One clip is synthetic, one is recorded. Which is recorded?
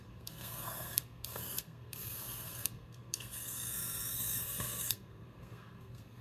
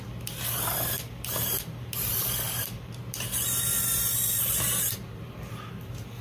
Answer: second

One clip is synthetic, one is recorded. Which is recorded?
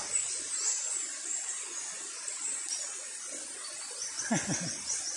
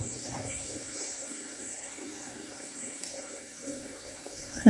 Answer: first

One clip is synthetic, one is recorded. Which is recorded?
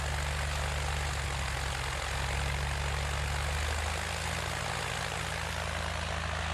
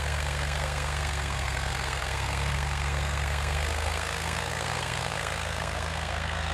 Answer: first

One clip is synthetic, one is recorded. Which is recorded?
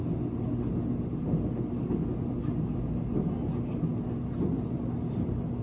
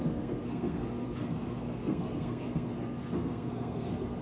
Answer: first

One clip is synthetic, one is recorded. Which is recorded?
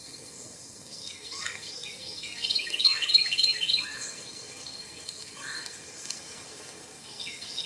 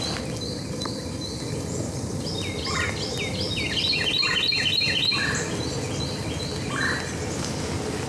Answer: second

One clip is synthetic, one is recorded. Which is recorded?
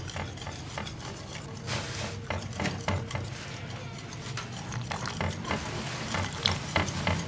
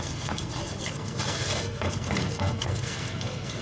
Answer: first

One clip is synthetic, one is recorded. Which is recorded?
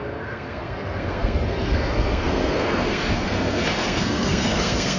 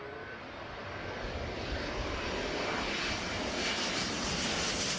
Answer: second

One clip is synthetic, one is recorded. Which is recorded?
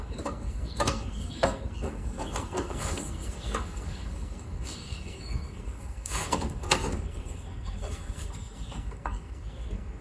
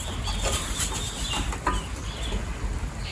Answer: second